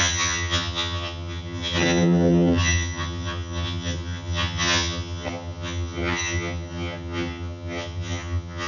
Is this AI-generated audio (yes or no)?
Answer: yes